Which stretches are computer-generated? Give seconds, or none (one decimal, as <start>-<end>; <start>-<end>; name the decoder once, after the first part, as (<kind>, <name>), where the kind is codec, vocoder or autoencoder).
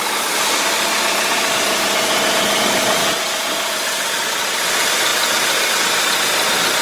none